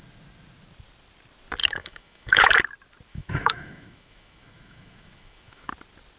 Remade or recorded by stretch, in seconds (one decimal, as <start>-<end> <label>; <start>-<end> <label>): 0.0-1.6 recorded; 1.6-2.6 remade; 2.6-3.1 recorded; 3.1-5.7 remade; 5.7-6.2 recorded